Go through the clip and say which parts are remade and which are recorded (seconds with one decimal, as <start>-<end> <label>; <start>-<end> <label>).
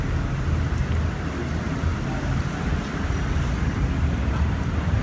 0.0-5.0 recorded